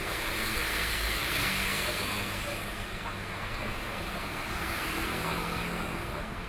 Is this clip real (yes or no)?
no